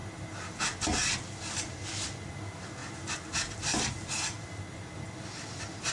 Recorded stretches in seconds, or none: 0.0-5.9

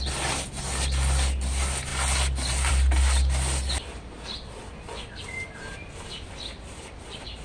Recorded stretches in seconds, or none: 0.0-7.4